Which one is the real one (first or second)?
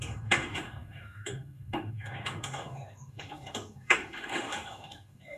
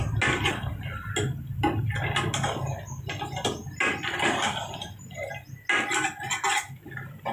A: second